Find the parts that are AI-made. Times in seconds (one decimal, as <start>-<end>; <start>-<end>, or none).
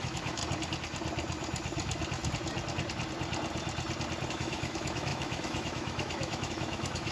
0.0-0.4; 4.3-7.1